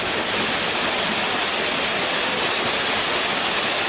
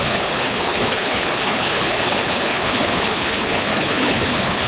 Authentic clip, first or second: first